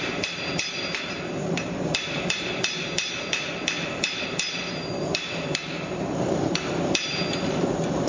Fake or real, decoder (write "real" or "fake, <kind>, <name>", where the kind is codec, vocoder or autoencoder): fake, vocoder, BigVGAN v2